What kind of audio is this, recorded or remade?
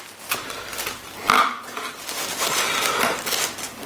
recorded